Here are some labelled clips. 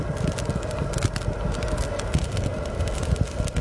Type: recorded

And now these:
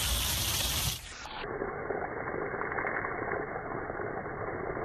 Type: remade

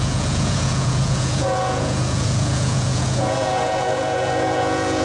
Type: remade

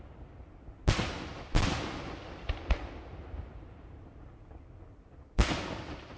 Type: recorded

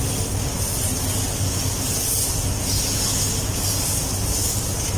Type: recorded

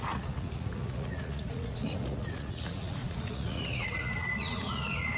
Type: remade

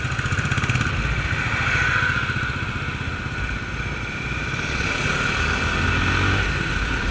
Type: recorded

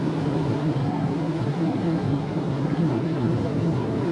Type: remade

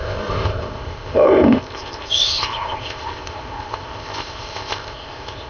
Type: remade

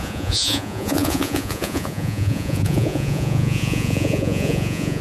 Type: remade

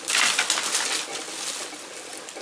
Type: recorded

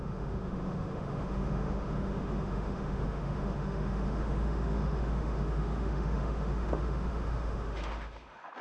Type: remade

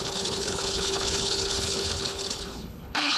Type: remade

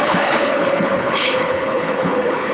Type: remade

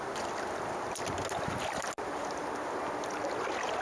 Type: recorded